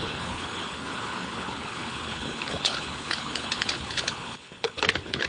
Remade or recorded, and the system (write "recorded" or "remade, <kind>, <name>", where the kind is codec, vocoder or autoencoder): remade, codec, HILCodec